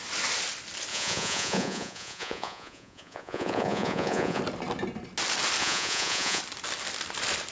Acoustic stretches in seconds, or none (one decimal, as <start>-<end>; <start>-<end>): 0.0-0.9; 4.4-5.6; 6.4-7.5